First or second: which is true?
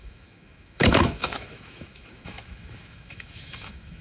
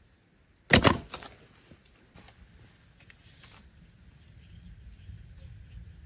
second